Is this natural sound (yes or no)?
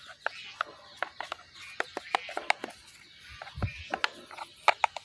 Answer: yes